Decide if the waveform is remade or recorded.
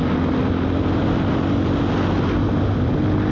recorded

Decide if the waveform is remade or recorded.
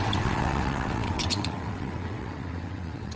remade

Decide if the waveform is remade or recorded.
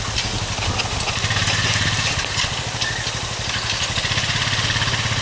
recorded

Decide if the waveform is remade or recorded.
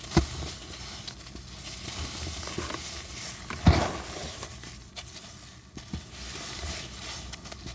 recorded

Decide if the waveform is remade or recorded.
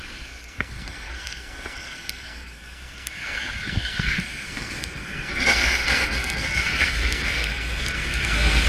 remade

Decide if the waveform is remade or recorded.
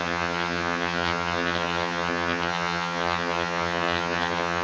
remade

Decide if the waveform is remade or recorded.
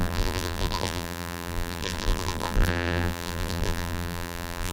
remade